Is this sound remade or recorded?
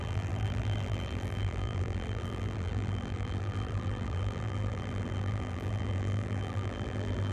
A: remade